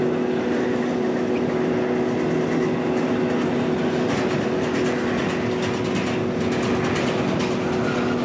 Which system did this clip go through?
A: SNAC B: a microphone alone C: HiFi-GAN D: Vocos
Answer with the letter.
B